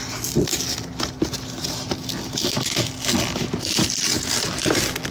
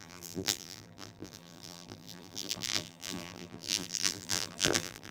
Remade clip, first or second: second